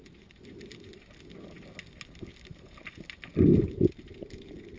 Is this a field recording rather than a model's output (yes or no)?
yes